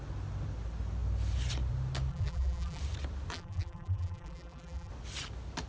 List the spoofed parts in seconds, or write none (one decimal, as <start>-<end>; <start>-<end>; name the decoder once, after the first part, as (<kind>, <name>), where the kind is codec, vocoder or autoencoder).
2.1-2.8 (vocoder, BigVGAN v2); 3.3-4.9